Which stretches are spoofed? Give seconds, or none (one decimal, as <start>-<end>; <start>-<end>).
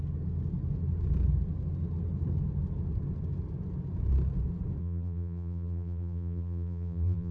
4.8-7.3